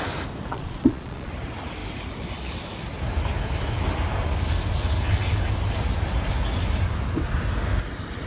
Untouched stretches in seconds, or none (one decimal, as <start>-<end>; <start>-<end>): 0.0-0.5; 1.3-8.3